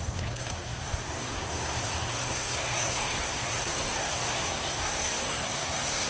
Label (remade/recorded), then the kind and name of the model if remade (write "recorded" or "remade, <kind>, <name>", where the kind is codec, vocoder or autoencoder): remade, codec, SNAC